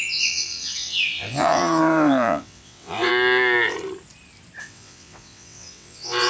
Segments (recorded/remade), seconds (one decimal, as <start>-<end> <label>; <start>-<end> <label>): 0.0-3.1 remade; 3.1-4.6 recorded; 4.6-6.3 remade

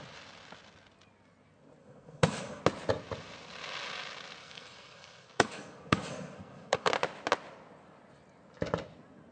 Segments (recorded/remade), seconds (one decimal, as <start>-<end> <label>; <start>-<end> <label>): 0.0-1.8 recorded; 1.8-2.6 remade; 2.6-4.4 recorded; 4.4-6.9 remade; 6.9-9.3 recorded

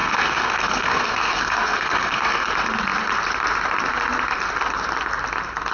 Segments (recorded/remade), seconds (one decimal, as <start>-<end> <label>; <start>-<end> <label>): 0.0-2.5 remade; 2.5-5.7 recorded

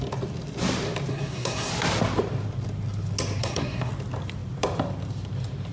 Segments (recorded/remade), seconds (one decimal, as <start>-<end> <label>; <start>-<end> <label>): 0.0-1.1 recorded; 1.1-1.7 remade; 1.7-3.4 recorded; 3.4-3.9 remade; 3.9-5.7 recorded